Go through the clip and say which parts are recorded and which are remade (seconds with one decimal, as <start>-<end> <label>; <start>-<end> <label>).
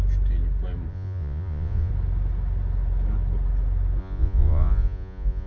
0.0-0.9 recorded; 0.9-1.9 remade; 1.9-4.0 recorded; 4.0-5.5 remade